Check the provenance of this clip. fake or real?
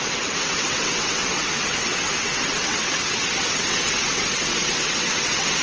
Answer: fake